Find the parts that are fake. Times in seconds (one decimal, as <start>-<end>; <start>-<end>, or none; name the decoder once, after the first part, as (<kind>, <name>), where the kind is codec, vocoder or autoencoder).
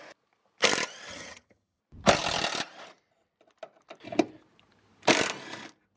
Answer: 1.1-1.8 (vocoder, HiFi-GAN)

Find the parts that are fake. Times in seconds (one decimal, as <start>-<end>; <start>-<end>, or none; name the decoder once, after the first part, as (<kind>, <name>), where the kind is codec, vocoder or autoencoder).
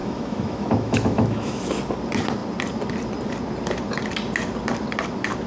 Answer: 0.0-1.7 (autoencoder, DAC-VAE)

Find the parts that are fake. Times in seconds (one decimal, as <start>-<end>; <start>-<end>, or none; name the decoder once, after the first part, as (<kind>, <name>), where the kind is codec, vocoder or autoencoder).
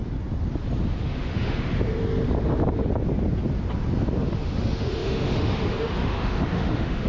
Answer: 1.0-2.0 (autoencoder, DAC-VAE); 4.3-7.1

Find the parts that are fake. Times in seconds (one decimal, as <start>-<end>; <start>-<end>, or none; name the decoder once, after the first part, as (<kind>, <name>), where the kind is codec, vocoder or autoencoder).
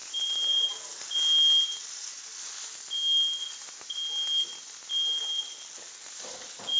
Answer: 0.0-0.9 (vocoder, BigVGAN v2)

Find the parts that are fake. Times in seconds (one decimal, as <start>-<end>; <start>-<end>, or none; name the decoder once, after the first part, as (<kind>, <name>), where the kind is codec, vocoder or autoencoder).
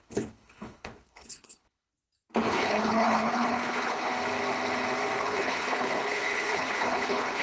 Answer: 0.0-1.9 (codec, HILCodec); 2.5-4.1; 5.2-7.4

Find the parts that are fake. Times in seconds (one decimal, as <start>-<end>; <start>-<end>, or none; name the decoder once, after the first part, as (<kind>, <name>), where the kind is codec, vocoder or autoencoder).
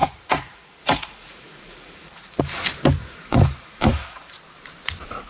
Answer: 0.0-2.4 (vocoder, Vocos); 3.0-4.3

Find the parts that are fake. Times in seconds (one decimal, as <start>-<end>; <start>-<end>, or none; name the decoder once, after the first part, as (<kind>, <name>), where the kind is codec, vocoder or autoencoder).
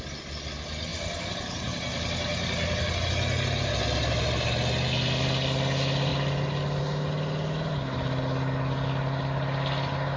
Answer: none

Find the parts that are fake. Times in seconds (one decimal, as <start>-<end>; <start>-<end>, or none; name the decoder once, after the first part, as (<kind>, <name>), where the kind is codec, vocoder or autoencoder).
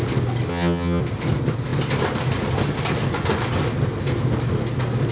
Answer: 0.5-1.0 (vocoder, HiFi-GAN)